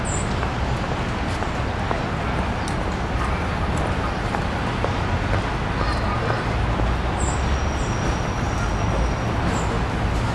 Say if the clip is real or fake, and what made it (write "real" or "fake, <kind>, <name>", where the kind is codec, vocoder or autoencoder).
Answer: real